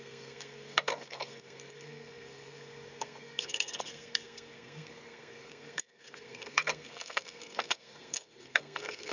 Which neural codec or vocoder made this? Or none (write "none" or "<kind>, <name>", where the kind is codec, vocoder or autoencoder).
codec, SNAC